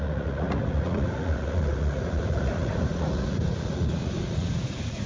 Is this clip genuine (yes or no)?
no